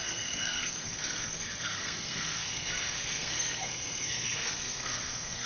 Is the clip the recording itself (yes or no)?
no